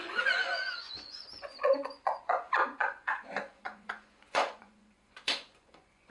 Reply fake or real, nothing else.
fake